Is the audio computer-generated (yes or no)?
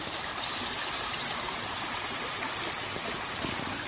yes